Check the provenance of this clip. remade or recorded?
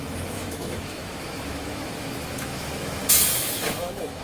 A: remade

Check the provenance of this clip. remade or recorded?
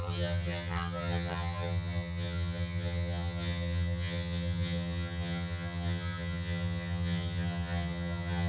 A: remade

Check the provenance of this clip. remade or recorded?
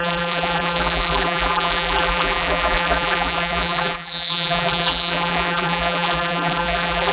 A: remade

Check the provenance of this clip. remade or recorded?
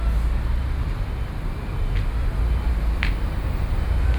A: recorded